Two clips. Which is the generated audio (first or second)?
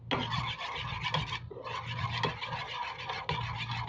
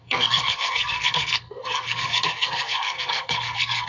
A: second